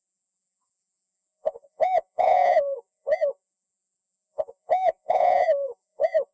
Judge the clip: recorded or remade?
remade